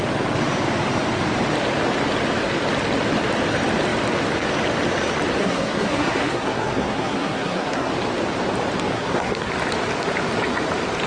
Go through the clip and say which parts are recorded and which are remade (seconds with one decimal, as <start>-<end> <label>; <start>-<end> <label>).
0.0-5.4 recorded; 5.4-7.9 remade; 7.9-8.9 recorded; 8.9-9.5 remade; 9.5-11.1 recorded